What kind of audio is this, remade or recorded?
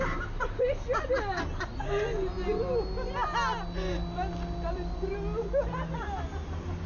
recorded